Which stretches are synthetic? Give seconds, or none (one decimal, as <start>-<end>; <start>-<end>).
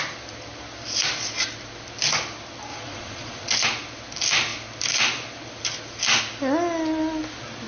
2.7-3.5